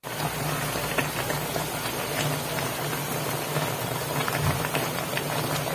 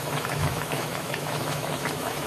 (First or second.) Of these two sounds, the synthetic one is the second